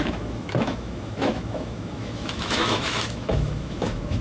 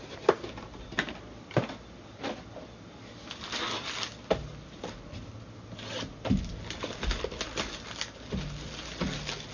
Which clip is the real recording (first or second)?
second